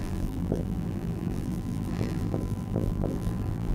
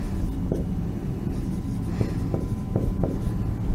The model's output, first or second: first